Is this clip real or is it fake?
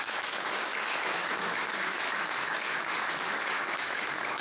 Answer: fake